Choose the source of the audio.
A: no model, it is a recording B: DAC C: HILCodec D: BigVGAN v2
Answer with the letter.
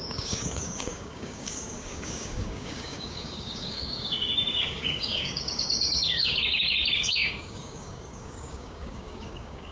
B